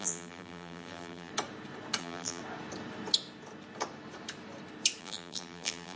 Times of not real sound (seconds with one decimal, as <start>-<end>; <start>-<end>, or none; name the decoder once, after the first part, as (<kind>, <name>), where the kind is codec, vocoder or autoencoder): 0.0-1.3 (vocoder, BigVGAN v2); 2.0-2.4; 5.0-6.0